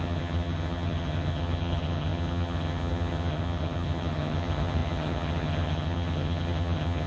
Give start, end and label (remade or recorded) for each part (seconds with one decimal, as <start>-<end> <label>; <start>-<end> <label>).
0.0-7.1 remade